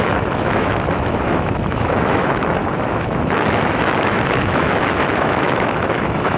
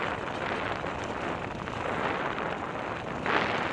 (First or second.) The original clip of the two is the second